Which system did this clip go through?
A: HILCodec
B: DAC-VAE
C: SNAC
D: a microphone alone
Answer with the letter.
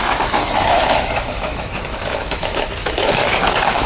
B